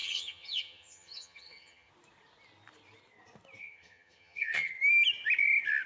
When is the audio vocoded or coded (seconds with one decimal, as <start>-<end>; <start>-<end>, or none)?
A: 0.0-1.9; 3.6-4.8